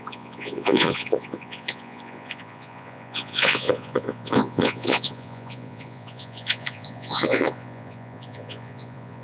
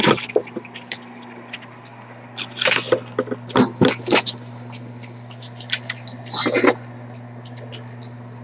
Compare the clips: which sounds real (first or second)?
second